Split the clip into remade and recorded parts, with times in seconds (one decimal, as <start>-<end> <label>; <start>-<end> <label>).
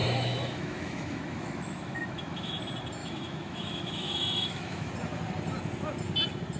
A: 0.0-2.6 remade; 2.6-3.0 recorded; 3.0-4.9 remade; 4.9-6.6 recorded